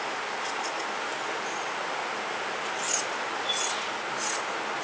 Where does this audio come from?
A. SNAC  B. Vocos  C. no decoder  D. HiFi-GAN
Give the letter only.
C